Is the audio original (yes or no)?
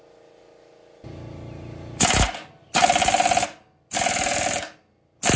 yes